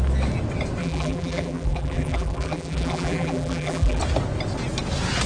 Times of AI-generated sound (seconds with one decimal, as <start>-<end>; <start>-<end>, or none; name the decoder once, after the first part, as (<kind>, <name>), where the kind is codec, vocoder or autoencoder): 0.8-4.0 (vocoder, BigVGAN v2)